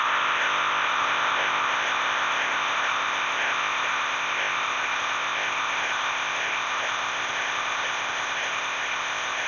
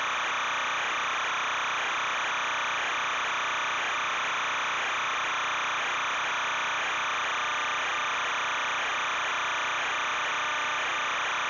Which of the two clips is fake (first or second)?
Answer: first